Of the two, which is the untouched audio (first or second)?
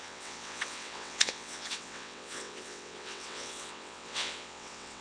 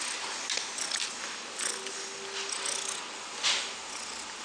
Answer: second